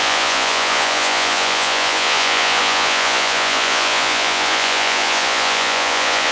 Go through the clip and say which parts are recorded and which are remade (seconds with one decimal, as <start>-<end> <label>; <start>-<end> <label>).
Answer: 0.0-6.3 remade